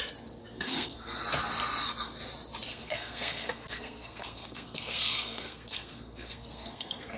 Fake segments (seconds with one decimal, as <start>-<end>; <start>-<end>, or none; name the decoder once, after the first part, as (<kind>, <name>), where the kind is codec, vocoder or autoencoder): 0.4-1.2 (codec, SNAC); 2.7-7.2